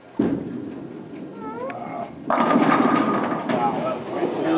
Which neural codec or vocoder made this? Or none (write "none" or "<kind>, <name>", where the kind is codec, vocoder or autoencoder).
none